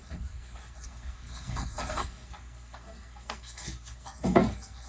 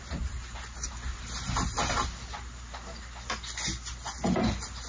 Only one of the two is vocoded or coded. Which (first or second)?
first